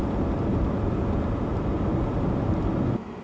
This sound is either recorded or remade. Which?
recorded